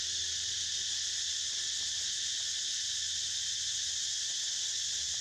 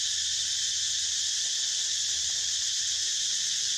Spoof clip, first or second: second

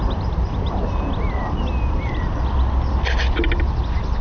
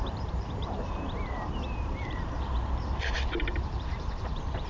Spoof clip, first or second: second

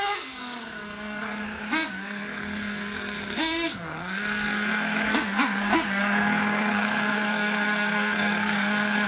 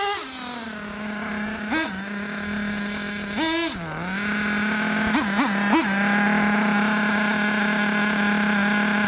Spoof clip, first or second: first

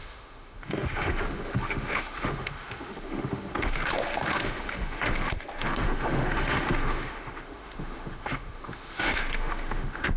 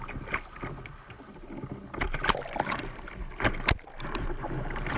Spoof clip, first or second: first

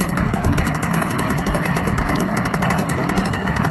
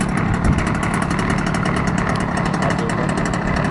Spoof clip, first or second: first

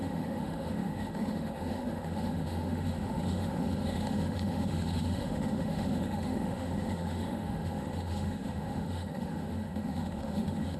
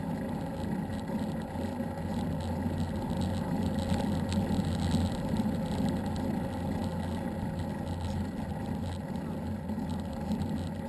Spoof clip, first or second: first